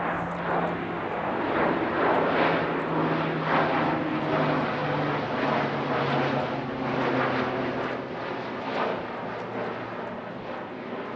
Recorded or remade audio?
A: recorded